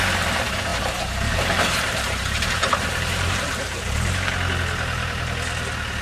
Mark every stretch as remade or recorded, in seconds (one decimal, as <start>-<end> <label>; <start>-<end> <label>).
0.0-0.7 recorded; 0.7-3.8 remade; 3.8-6.0 recorded